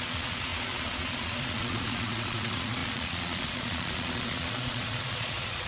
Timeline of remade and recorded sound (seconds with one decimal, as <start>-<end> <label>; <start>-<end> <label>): 0.0-5.7 remade